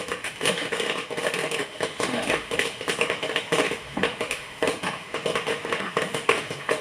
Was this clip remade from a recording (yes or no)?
yes